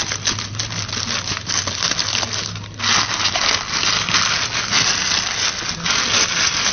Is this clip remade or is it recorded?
recorded